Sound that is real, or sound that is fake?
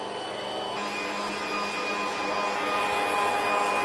real